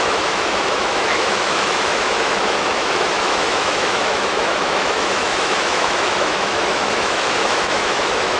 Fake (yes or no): yes